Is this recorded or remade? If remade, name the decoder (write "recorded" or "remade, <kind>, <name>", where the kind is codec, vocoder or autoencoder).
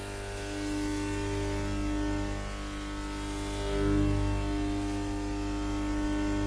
recorded